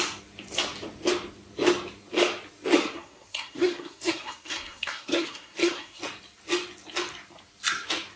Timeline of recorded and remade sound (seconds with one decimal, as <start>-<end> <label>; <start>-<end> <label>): 0.0-2.8 recorded; 2.8-6.0 remade; 6.0-8.2 recorded